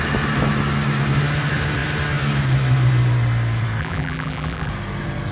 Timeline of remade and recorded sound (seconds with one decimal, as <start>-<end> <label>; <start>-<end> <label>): 0.0-3.8 recorded; 3.8-4.7 remade; 4.7-5.3 recorded